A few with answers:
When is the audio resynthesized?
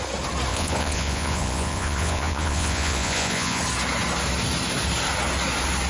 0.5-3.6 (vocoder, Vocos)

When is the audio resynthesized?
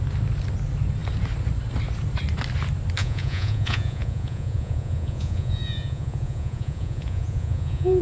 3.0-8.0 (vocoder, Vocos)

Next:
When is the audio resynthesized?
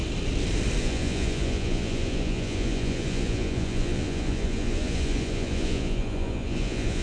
0.8-7.0 (vocoder, Vocos)